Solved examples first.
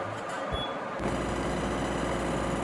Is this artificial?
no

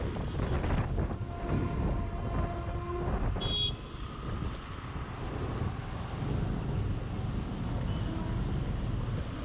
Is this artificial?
no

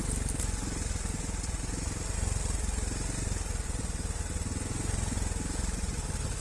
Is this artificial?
no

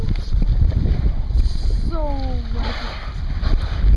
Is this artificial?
no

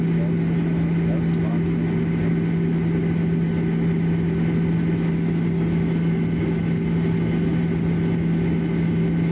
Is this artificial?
no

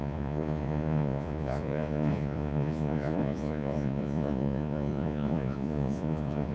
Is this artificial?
yes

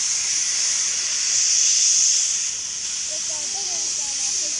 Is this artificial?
no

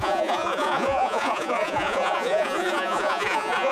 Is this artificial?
yes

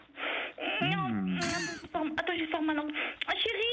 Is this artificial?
no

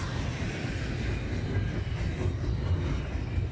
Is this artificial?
no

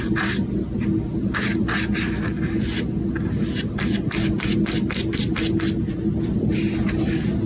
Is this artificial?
no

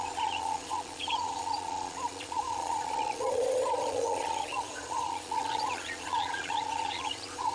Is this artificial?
yes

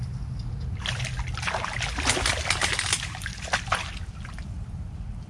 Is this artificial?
no